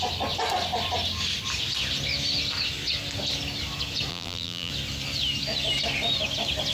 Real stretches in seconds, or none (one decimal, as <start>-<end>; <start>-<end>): 0.0-4.1; 4.7-6.7